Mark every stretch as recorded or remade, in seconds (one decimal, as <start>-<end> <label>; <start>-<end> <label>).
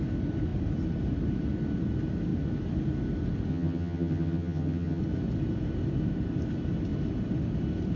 0.0-3.5 recorded; 3.5-5.0 remade; 5.0-8.0 recorded